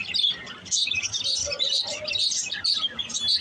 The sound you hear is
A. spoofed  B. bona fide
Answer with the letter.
B